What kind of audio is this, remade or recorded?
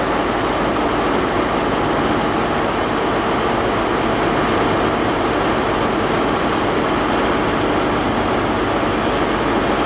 recorded